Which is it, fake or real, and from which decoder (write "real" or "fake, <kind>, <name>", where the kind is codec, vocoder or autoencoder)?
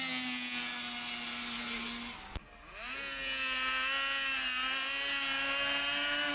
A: real